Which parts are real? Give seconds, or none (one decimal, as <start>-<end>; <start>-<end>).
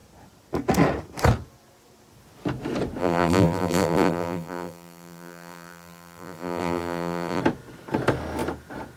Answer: 0.0-3.0; 7.4-9.0